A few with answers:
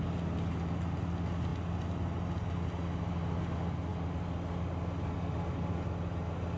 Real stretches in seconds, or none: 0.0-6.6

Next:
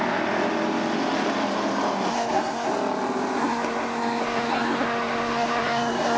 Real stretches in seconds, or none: 0.0-2.1; 2.7-3.4

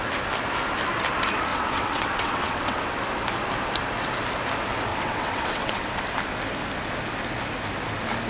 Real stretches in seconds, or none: 0.0-1.5; 2.8-4.9; 6.1-8.3

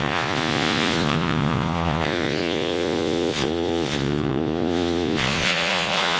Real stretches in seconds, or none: none